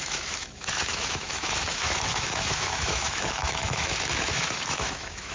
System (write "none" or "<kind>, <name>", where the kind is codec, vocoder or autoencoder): autoencoder, DAC-VAE